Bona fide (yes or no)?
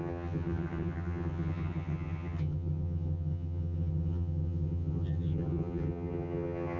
no